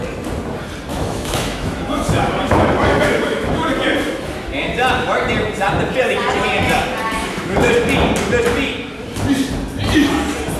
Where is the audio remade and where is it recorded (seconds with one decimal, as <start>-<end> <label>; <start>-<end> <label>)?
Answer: 0.0-0.9 recorded; 0.9-3.7 remade; 3.7-7.2 recorded; 7.2-7.7 remade; 7.7-10.6 recorded